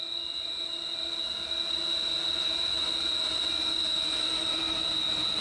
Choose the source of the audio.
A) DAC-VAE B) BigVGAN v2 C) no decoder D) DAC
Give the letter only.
C